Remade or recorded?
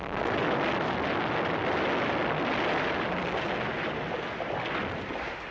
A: recorded